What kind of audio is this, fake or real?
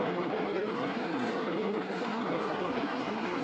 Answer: fake